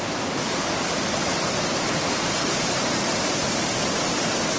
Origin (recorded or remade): recorded